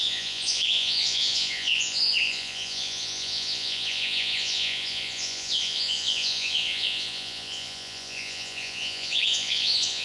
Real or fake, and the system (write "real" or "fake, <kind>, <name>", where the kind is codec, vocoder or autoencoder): fake, vocoder, Vocos